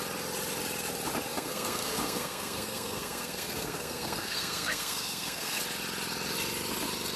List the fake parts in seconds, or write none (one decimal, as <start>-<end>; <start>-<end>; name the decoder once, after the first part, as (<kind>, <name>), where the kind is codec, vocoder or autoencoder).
1.3-5.6 (codec, SNAC)